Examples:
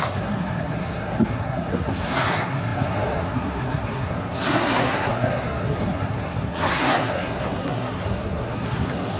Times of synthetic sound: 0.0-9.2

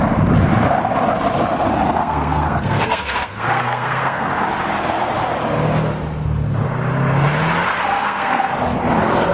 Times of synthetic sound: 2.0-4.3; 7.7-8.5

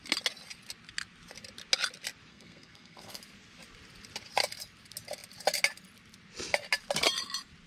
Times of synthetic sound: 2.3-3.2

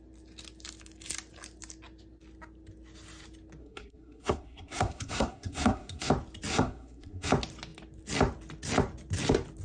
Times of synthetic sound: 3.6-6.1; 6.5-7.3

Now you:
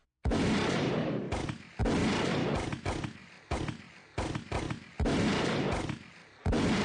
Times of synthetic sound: none

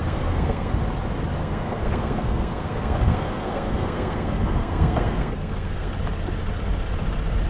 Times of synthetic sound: 0.0-0.7; 1.4-5.9